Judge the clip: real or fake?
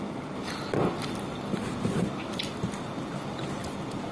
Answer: real